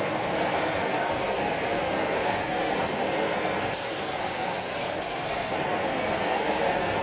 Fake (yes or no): yes